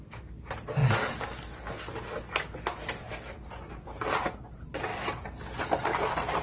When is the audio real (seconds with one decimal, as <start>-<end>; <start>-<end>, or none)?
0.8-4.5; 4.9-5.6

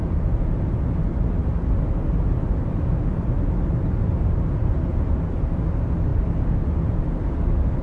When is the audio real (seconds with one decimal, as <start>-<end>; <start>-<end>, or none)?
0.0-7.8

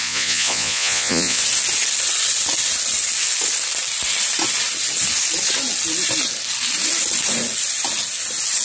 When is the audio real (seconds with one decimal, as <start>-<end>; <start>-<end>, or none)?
1.4-8.6

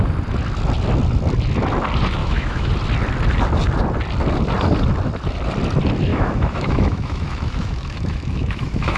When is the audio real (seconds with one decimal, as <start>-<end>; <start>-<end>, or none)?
0.0-2.2; 2.7-6.1

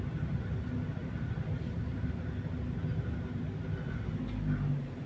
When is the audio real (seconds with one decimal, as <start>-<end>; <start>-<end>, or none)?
0.0-1.0; 4.1-5.1